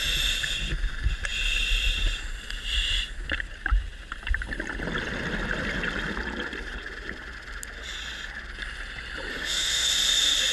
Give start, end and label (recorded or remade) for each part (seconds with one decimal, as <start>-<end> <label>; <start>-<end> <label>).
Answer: 0.0-9.3 recorded; 9.3-9.9 remade; 9.9-10.5 recorded